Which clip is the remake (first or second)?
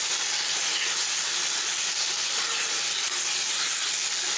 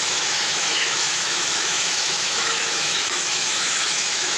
second